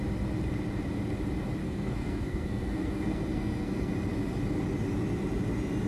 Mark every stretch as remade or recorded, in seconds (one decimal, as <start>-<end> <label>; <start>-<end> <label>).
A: 0.0-1.6 recorded; 1.6-3.9 remade; 3.9-5.9 recorded